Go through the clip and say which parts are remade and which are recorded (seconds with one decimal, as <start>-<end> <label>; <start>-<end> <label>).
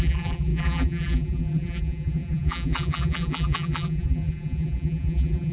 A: 0.0-5.5 remade